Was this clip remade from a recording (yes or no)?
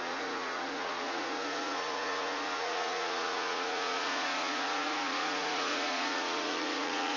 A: yes